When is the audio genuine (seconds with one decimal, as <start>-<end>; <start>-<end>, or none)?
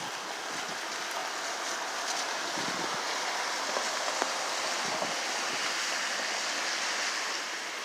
0.0-7.8